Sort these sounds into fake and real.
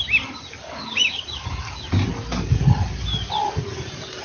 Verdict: real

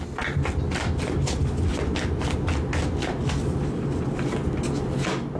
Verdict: real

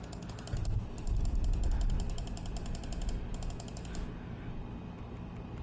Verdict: real